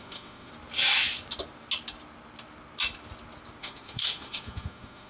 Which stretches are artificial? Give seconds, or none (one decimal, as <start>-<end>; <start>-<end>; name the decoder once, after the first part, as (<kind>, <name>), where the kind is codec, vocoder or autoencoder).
0.0-0.5 (autoencoder, DAC-VAE); 3.6-5.1